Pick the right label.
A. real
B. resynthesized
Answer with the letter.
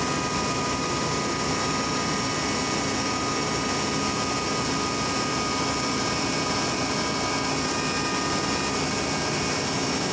A